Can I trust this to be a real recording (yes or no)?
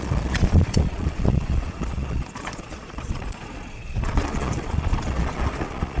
no